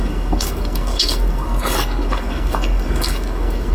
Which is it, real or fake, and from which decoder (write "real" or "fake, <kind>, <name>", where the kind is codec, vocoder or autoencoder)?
fake, codec, SNAC